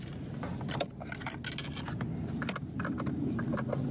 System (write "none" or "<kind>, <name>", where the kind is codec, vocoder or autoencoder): none